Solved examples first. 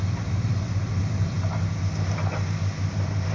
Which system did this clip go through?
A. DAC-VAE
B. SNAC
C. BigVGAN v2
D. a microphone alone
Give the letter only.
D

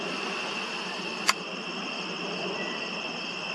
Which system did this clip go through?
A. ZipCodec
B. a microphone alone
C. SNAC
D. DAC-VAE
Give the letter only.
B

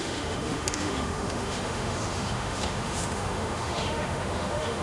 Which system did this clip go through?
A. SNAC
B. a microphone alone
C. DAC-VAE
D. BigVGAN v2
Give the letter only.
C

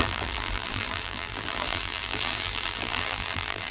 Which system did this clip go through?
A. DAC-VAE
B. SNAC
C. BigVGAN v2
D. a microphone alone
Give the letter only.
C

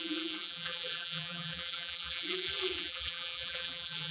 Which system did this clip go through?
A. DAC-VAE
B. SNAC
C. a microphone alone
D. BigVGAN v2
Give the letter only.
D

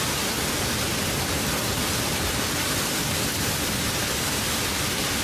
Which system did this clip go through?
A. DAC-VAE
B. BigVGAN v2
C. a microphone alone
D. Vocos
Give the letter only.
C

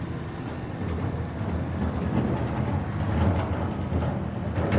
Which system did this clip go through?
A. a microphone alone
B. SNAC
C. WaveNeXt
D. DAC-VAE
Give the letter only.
A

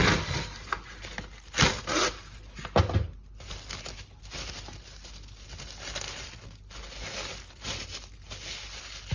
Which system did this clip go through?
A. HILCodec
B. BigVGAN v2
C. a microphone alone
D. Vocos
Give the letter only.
C